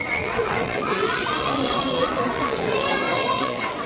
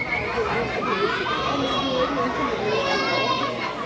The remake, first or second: first